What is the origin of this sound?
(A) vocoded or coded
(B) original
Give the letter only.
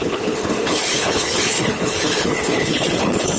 A